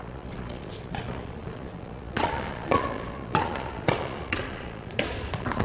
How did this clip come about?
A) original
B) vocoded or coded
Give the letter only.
B